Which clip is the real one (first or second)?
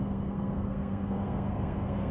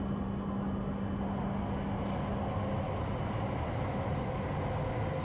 second